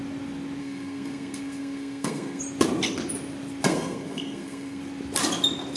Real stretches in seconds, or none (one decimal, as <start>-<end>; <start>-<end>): 0.0-0.6; 2.4-3.7; 4.8-5.8